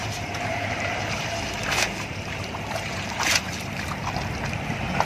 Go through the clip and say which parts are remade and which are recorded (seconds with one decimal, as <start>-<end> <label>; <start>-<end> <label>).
0.0-3.1 remade; 3.1-5.1 recorded